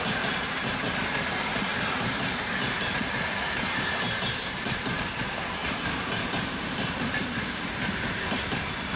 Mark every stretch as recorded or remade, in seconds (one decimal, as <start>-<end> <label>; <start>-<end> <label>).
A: 0.0-9.0 remade